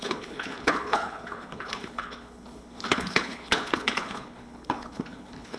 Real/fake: fake